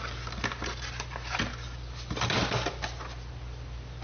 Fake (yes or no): no